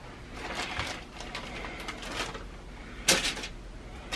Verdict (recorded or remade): recorded